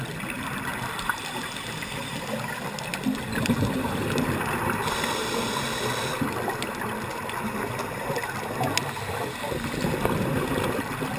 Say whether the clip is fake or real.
real